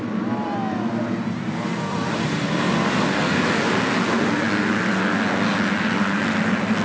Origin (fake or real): real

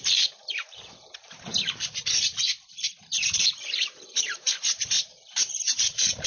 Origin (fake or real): fake